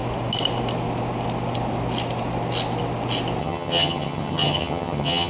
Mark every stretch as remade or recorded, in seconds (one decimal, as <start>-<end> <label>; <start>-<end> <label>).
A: 0.0-3.4 recorded; 3.4-5.3 remade